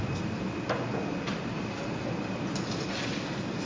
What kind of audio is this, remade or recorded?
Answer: recorded